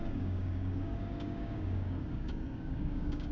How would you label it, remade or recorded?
remade